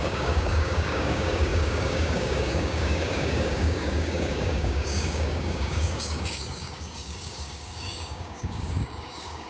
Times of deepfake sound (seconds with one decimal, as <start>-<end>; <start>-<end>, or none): 0.0-9.5